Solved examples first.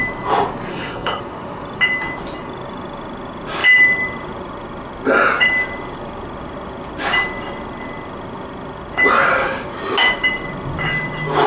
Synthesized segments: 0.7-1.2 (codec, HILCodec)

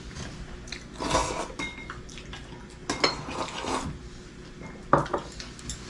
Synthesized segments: none

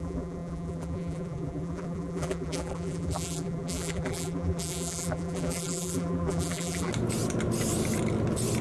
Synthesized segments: 0.0-6.9 (vocoder, BigVGAN v2)

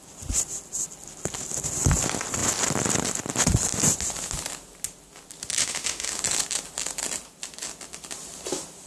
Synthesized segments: 5.6-6.2 (autoencoder, DAC-VAE)

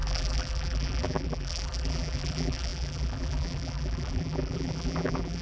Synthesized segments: 0.0-5.4 (vocoder, BigVGAN v2)

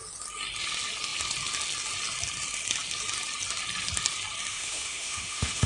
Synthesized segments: 4.5-5.7 (autoencoder, DAC-VAE)

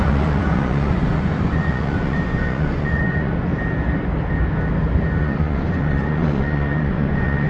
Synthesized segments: 0.0-3.5 (vocoder, Vocos); 5.2-7.5